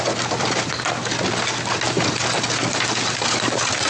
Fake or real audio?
real